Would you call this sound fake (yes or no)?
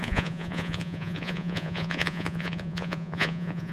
yes